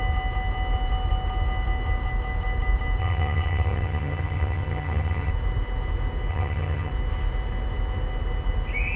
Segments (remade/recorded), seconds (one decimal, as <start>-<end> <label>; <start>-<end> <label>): 0.0-3.0 recorded; 3.0-5.3 remade; 5.3-6.3 recorded; 6.3-6.9 remade; 6.9-9.0 recorded